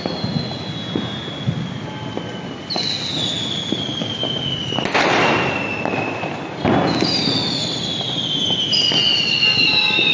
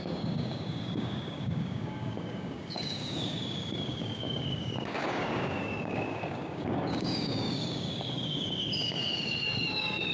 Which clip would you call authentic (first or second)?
first